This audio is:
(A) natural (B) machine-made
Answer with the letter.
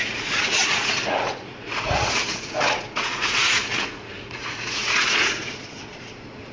B